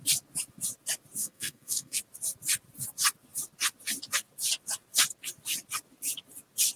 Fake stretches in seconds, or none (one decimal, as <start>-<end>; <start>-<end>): 1.2-2.0